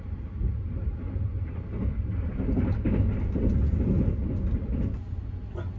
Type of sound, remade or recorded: recorded